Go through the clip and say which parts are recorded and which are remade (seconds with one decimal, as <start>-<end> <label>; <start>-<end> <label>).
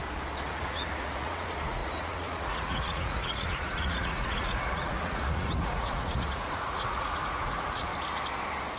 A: 0.0-0.5 recorded; 0.5-7.9 remade; 7.9-8.8 recorded